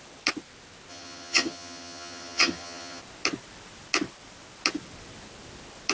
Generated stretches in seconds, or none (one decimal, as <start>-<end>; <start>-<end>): 0.9-3.0